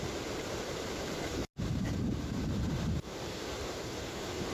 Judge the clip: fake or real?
fake